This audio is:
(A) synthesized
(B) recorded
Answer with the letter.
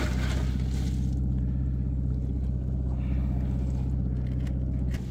B